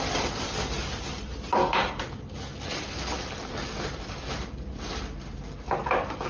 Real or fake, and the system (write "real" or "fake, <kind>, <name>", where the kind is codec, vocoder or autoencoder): real